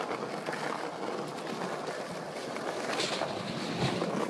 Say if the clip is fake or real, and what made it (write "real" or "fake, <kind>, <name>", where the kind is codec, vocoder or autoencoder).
real